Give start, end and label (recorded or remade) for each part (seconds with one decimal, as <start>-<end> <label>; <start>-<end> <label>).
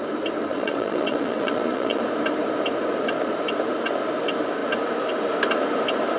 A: 0.0-0.5 recorded; 0.5-2.0 remade; 2.0-6.2 recorded